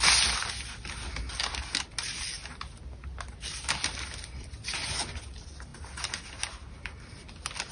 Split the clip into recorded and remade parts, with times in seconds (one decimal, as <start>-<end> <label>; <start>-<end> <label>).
0.0-7.7 recorded